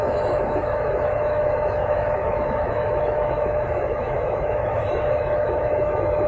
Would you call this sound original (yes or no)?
no